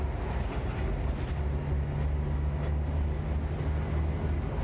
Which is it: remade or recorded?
recorded